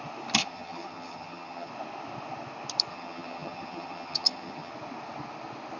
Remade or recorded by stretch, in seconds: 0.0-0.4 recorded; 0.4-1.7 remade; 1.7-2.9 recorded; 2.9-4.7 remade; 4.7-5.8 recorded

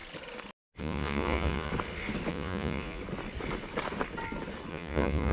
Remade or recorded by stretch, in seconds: 0.0-0.8 recorded; 0.8-1.7 remade; 1.7-2.3 recorded; 2.3-3.0 remade; 3.0-4.7 recorded; 4.7-5.3 remade